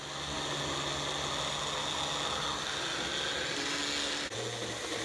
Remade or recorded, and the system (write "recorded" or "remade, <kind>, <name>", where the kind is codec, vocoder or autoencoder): recorded